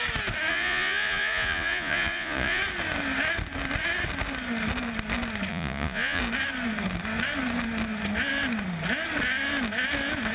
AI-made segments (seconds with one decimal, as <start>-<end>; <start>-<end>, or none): 0.5-2.6; 5.5-6.2